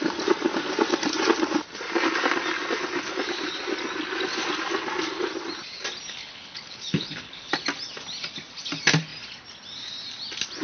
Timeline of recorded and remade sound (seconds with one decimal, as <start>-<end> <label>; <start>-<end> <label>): 0.0-6.2 recorded; 6.2-7.5 remade; 7.5-10.6 recorded